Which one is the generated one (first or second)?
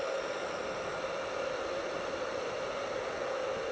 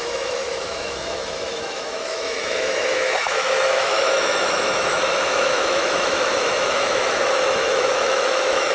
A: second